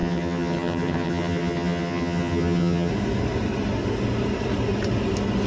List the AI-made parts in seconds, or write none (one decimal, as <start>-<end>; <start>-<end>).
0.0-2.9